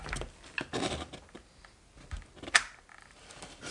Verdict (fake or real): real